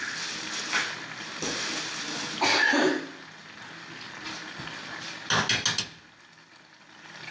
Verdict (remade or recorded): recorded